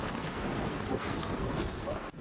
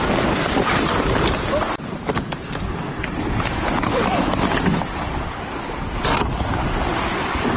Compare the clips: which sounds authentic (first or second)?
second